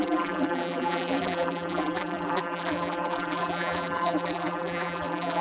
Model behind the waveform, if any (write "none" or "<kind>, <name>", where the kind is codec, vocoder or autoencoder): vocoder, BigVGAN v2